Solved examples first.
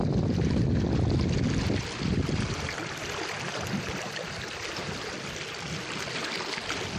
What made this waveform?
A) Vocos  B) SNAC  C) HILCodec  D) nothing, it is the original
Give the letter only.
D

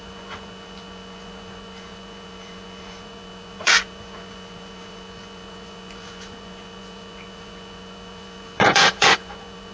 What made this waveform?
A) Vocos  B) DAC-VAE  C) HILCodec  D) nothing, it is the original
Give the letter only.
A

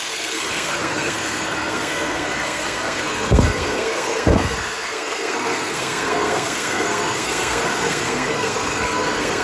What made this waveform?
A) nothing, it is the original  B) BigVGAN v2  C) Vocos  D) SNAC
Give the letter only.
D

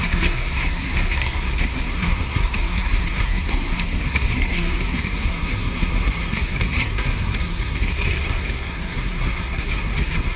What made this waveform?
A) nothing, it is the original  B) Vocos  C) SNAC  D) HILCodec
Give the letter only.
C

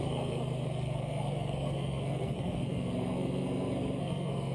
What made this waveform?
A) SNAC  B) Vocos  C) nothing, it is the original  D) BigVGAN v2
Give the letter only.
A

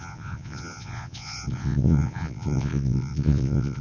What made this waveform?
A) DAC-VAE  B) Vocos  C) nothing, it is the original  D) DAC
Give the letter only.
B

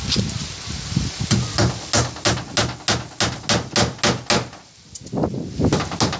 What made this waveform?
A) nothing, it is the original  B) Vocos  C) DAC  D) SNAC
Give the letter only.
A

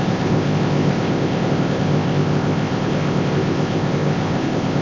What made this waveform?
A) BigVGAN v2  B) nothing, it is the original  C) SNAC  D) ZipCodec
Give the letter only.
D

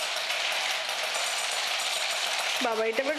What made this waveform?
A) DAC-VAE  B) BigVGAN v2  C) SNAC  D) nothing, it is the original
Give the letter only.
B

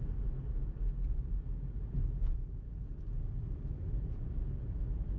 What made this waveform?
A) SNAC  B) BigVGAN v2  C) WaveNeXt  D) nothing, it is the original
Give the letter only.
D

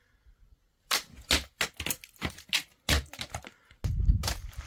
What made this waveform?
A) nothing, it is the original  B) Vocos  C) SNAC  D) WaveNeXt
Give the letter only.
A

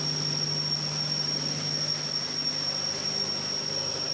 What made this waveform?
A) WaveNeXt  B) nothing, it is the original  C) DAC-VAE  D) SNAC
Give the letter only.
B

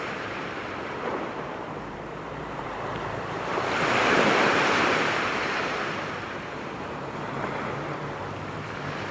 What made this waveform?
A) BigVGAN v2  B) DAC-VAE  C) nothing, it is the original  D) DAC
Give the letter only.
A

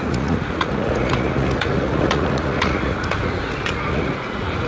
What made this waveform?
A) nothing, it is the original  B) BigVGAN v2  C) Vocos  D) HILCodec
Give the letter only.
C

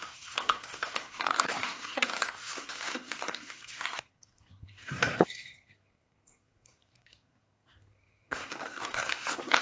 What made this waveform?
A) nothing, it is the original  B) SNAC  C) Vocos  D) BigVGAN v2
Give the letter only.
B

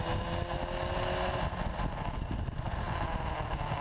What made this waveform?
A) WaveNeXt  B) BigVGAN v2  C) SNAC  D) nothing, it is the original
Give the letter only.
D